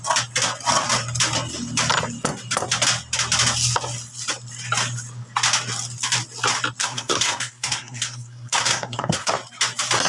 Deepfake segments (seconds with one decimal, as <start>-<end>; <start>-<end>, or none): 6.8-9.3